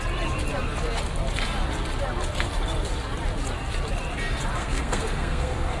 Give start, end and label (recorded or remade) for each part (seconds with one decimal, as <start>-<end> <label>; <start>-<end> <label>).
0.0-4.6 recorded; 4.6-5.8 remade